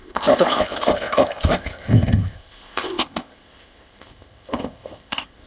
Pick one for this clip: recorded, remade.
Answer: remade